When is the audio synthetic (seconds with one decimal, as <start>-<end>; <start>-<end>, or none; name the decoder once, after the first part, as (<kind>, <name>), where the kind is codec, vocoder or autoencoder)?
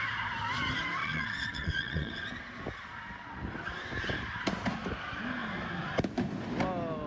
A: 1.0-2.1 (vocoder, Vocos)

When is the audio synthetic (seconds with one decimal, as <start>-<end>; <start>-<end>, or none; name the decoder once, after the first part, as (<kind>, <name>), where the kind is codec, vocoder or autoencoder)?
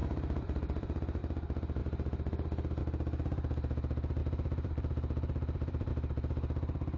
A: 0.0-1.2 (vocoder, BigVGAN v2); 4.2-5.9